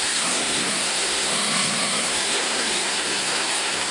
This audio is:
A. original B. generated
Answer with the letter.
B